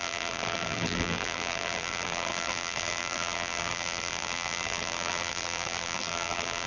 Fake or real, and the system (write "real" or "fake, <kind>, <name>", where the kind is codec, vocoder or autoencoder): fake, vocoder, BigVGAN v2